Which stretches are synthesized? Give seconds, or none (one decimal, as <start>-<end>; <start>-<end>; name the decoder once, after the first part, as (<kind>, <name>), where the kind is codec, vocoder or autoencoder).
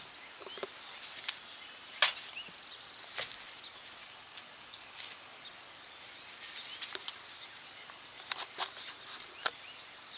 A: 4.0-5.4 (codec, DAC); 7.8-8.3